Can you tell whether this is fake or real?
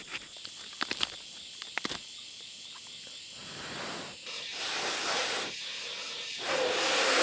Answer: real